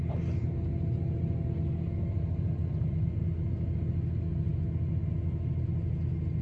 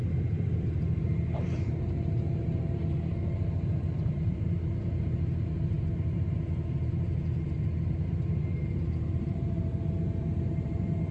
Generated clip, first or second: second